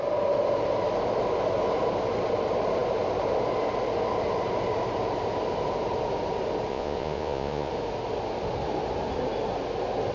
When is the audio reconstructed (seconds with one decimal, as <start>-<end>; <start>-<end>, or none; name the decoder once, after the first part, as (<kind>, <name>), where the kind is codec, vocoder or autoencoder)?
6.7-7.7 (vocoder, Vocos)